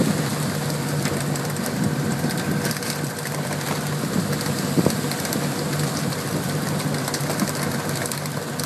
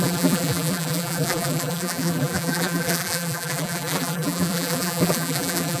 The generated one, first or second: second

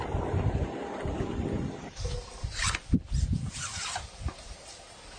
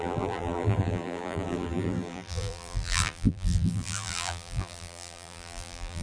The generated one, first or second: second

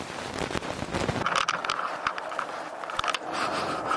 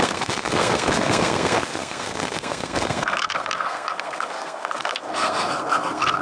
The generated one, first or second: second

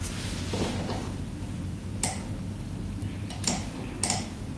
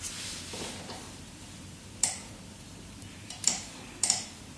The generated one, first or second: second